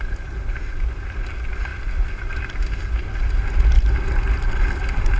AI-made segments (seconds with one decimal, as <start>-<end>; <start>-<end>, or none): none